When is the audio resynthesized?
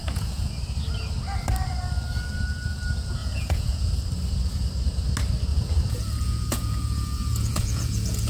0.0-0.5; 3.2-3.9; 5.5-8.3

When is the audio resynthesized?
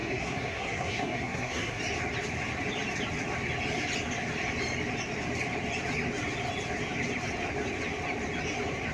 0.0-1.8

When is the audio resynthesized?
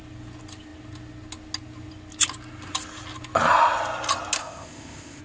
4.4-5.2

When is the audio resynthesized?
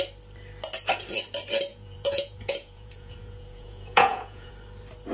1.7-4.5